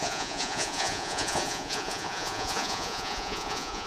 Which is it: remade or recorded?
remade